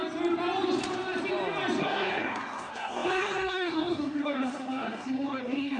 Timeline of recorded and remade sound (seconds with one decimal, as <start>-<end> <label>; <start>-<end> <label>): 0.0-1.8 recorded; 1.8-5.8 remade